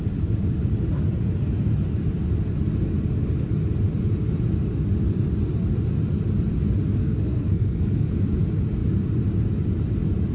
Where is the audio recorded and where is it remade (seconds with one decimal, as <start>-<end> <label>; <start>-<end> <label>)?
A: 0.0-7.0 recorded; 7.0-8.1 remade; 8.1-10.3 recorded